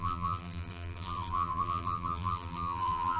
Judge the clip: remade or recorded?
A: remade